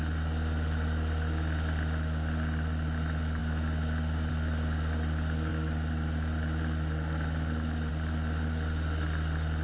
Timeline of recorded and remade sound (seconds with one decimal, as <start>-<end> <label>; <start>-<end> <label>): 0.0-9.6 recorded